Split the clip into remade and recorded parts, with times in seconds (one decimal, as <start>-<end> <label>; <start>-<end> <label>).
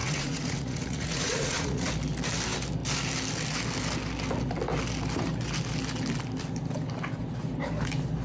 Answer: 0.0-1.9 remade; 1.9-8.2 recorded